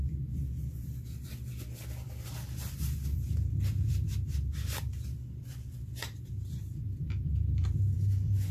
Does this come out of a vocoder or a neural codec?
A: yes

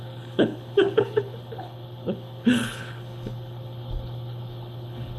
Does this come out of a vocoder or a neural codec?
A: yes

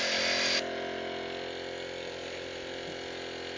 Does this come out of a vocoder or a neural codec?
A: no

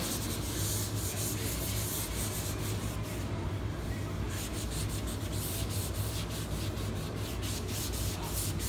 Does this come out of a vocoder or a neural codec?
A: no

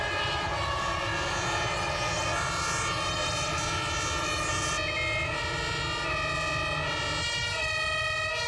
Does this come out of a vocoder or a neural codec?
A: no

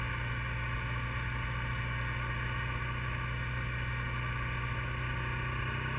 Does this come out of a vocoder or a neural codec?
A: no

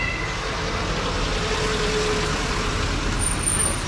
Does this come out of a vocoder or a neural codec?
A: no